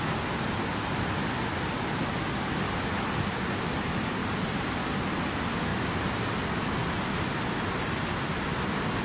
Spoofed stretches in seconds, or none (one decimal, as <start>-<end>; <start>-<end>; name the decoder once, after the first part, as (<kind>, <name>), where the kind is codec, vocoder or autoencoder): none